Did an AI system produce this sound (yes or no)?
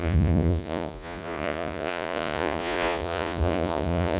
yes